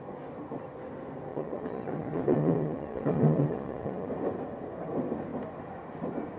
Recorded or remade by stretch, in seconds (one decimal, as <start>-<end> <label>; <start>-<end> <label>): 0.0-1.3 recorded; 1.3-4.1 remade; 4.1-6.4 recorded